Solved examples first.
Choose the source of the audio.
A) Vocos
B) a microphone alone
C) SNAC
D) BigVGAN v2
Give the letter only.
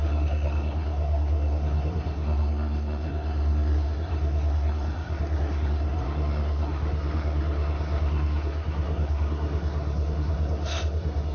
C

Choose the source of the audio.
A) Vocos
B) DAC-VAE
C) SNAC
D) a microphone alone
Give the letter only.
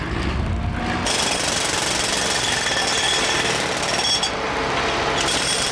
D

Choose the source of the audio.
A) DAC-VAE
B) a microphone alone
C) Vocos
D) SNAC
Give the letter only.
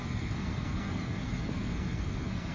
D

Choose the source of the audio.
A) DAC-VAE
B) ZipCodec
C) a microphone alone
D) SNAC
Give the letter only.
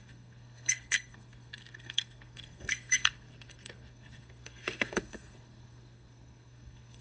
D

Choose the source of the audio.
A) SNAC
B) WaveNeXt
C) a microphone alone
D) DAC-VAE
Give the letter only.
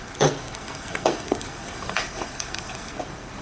A